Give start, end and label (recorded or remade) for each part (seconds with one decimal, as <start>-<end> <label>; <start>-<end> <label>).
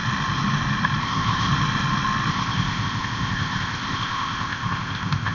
0.0-1.0 recorded; 1.0-1.5 remade; 1.5-2.3 recorded; 2.3-5.3 remade